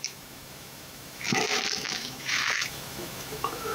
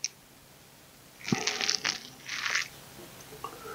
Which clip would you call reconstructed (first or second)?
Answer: first